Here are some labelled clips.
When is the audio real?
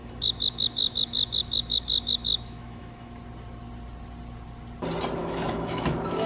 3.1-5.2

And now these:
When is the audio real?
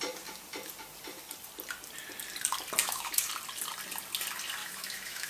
0.0-2.8; 3.3-4.6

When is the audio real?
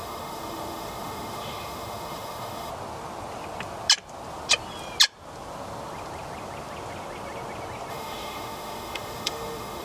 2.7-7.9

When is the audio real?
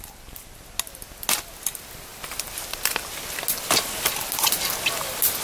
0.0-5.4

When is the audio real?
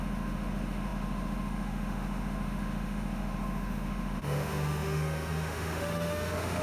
none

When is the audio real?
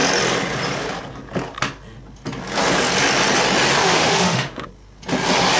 0.0-3.8; 4.7-5.6